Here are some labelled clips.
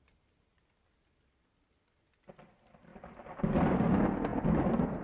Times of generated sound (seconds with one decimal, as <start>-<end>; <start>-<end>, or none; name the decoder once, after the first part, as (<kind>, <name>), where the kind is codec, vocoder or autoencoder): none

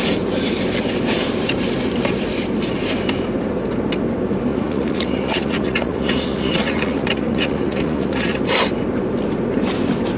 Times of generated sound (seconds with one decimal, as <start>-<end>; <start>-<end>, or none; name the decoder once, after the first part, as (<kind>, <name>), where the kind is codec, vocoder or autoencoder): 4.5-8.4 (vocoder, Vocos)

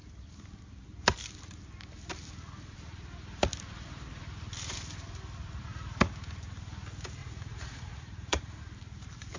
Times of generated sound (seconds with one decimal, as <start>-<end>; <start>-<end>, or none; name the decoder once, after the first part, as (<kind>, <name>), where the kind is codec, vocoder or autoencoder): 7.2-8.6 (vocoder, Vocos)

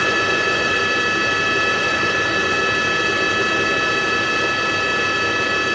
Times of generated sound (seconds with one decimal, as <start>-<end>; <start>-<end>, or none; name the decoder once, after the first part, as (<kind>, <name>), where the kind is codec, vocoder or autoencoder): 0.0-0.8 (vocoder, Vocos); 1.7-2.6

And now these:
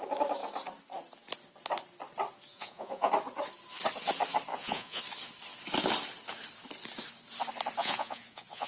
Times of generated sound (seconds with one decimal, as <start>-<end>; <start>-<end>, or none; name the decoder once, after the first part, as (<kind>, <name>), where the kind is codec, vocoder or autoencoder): 2.5-3.1 (vocoder, Vocos); 4.5-5.0; 7.8-8.7

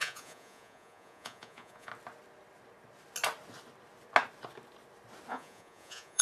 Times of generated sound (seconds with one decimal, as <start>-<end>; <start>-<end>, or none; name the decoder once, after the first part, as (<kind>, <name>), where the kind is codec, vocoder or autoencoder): 0.0-1.9 (vocoder, Vocos); 5.3-6.2

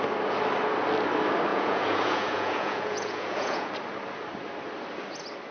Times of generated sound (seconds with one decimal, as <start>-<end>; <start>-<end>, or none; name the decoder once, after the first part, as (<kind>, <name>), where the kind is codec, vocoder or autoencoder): 1.5-3.7 (vocoder, Vocos)